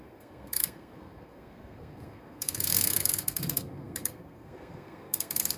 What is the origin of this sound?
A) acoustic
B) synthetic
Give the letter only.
B